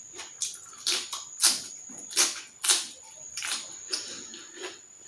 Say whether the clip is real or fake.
real